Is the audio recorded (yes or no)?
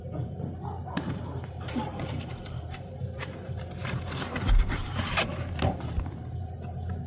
no